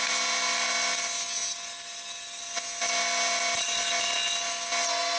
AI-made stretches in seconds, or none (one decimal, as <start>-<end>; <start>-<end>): none